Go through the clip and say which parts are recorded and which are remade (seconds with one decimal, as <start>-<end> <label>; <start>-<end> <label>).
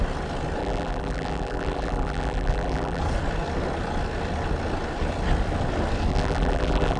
0.0-0.6 recorded; 0.6-3.0 remade; 3.0-6.1 recorded; 6.1-7.0 remade